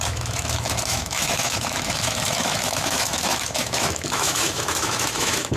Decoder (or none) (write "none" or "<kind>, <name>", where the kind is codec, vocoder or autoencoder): autoencoder, DAC-VAE